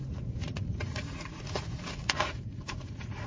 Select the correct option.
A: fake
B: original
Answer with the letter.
A